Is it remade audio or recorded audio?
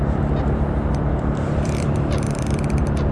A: remade